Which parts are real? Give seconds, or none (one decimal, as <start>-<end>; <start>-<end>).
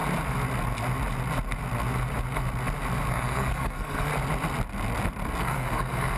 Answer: 0.0-3.1; 4.1-5.4